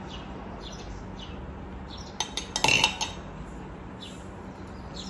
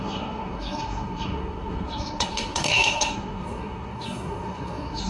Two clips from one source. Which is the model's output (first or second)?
second